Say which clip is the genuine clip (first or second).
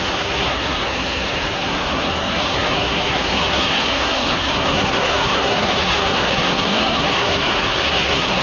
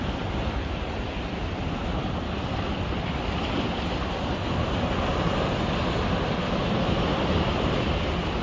second